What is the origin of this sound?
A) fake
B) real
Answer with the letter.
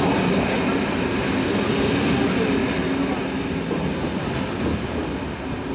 B